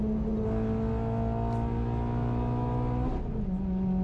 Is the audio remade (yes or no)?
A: no